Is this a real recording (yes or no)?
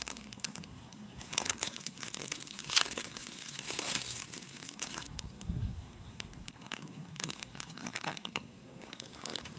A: no